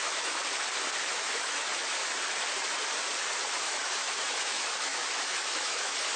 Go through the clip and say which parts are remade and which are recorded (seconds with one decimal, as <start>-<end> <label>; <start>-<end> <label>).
0.0-0.4 remade; 0.4-1.1 recorded; 1.1-2.0 remade; 2.0-3.6 recorded; 3.6-6.2 remade